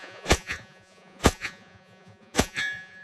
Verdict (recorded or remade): remade